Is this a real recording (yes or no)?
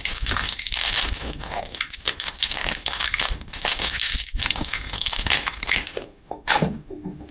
no